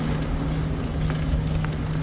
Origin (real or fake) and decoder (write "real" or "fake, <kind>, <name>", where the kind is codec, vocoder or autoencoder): real